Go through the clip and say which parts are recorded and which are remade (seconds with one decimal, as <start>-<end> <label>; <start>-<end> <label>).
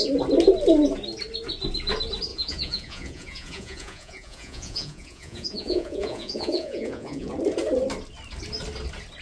0.0-2.3 recorded; 2.3-7.3 remade; 7.3-9.2 recorded